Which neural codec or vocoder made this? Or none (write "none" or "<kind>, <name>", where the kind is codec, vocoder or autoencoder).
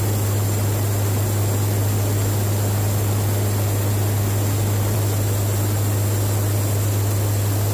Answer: none